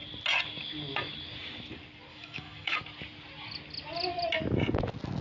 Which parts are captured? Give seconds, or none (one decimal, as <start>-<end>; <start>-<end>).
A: 0.0-2.1; 2.8-5.2